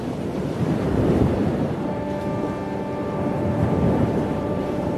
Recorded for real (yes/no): no